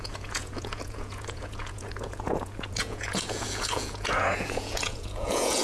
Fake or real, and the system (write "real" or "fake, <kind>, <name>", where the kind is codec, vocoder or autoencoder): fake, vocoder, Vocos